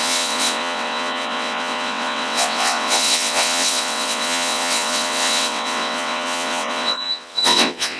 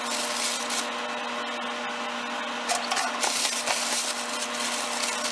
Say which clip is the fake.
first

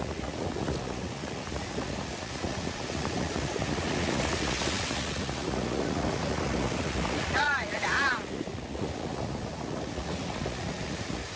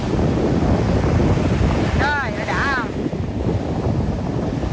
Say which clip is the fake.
first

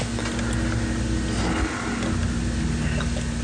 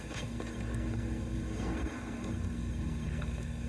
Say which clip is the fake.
second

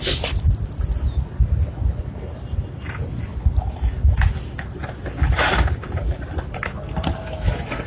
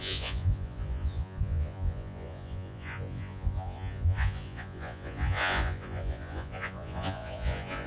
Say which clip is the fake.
second